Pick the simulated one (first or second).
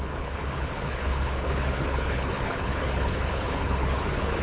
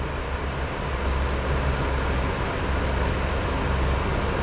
first